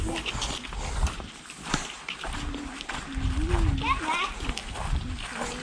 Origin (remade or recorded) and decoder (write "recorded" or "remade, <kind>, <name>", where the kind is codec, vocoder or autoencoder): recorded